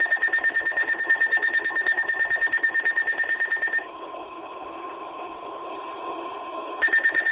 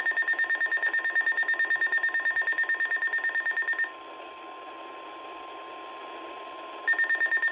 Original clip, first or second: second